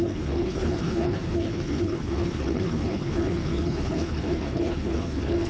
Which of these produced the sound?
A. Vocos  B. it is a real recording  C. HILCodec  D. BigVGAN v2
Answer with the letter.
C